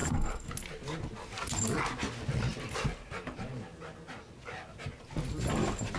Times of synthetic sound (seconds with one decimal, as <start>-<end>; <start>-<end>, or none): 0.0-0.5